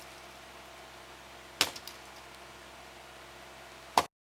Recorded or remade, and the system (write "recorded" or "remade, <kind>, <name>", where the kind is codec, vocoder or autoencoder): recorded